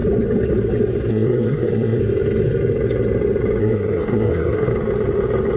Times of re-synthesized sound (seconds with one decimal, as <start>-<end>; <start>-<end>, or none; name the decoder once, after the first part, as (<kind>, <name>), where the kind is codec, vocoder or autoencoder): 1.1-2.0 (codec, SNAC); 3.6-4.7